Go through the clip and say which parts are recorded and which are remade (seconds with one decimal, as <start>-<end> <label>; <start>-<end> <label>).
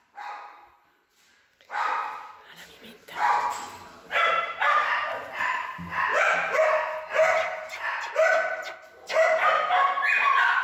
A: 0.0-6.1 recorded; 6.1-6.6 remade; 6.6-10.6 recorded